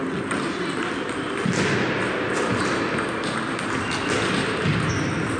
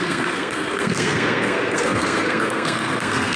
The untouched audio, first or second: first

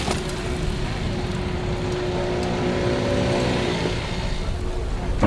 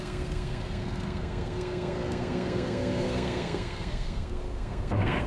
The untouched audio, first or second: first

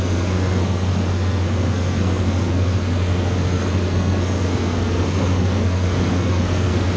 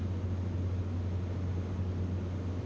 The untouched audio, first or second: second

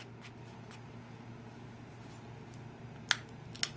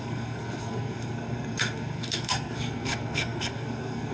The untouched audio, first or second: first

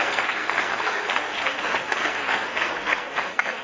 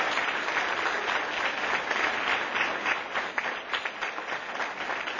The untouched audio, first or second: second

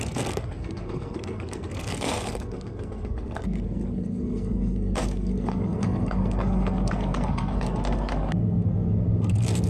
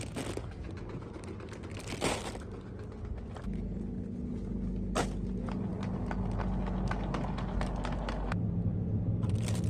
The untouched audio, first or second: second